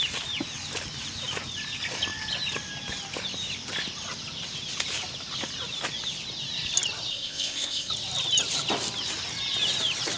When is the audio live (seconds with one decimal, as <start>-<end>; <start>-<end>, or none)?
0.0-7.1; 7.9-10.2